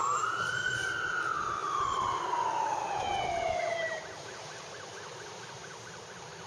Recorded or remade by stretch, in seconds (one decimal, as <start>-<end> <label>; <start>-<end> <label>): 0.0-6.5 recorded